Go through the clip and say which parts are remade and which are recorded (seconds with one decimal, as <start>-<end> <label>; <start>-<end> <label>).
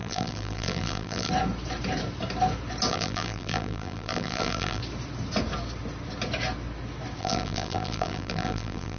0.0-1.3 remade; 1.3-2.9 recorded; 2.9-4.8 remade; 4.8-7.2 recorded; 7.2-9.0 remade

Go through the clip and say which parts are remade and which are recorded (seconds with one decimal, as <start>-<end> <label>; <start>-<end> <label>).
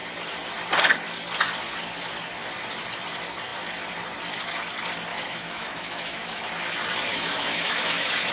0.0-5.1 recorded; 5.1-6.5 remade; 6.5-7.1 recorded; 7.1-8.3 remade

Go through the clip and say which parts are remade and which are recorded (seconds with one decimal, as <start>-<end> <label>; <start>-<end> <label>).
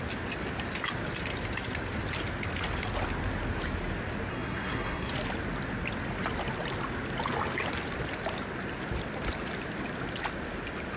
0.0-4.3 recorded; 4.3-5.1 remade; 5.1-11.0 recorded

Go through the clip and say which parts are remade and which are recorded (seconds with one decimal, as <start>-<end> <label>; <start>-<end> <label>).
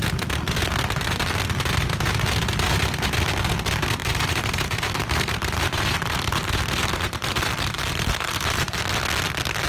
0.0-4.0 recorded; 4.0-8.8 remade; 8.8-9.7 recorded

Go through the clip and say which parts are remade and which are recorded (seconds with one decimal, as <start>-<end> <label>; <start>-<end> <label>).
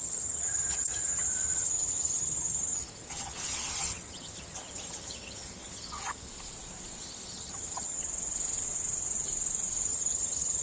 0.0-6.3 remade; 6.3-7.0 recorded; 7.0-8.0 remade; 8.0-9.9 recorded; 9.9-10.6 remade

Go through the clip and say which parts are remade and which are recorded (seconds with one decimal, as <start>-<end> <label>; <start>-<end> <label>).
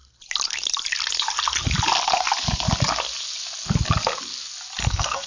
0.0-4.8 recorded; 4.8-5.3 remade